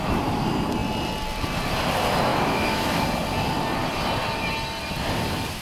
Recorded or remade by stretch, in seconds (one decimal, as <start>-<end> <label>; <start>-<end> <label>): 0.0-2.3 recorded; 2.3-3.0 remade; 3.0-5.6 recorded